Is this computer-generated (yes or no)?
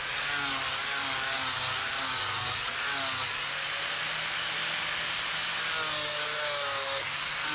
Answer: no